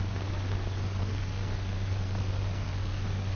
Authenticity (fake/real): fake